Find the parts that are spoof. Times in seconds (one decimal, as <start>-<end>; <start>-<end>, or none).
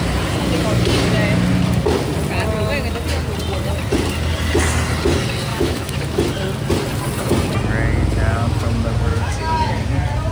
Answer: 5.5-6.3; 9.1-9.7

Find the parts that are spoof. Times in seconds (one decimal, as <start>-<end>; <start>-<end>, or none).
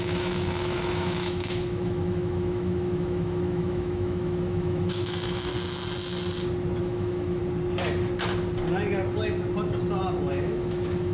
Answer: 0.0-5.5; 6.8-7.4; 10.3-11.1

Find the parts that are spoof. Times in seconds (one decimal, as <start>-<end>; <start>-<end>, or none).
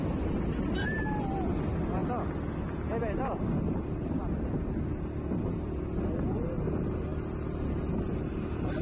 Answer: none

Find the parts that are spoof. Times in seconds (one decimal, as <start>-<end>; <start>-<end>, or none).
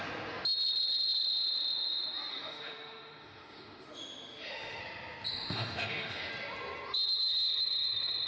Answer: 2.3-4.8; 5.3-6.3